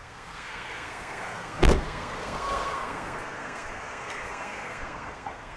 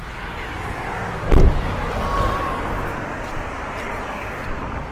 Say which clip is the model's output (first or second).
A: first